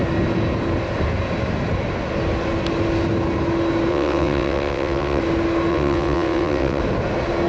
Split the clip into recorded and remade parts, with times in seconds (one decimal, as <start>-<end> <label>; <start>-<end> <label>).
0.0-3.9 recorded; 3.9-5.2 remade; 5.2-5.7 recorded; 5.7-6.8 remade; 6.8-7.5 recorded